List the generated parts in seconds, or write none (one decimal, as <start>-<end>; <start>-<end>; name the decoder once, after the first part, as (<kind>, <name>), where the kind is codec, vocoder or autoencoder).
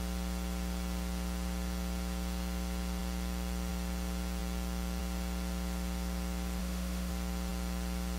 6.6-7.1 (autoencoder, DAC-VAE)